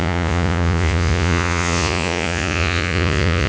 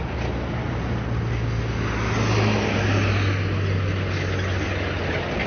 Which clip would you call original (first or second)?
second